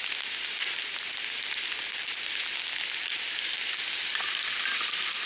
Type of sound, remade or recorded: recorded